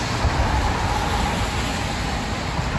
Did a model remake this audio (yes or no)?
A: no